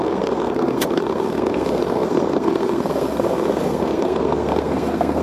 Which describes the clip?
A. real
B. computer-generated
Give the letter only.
B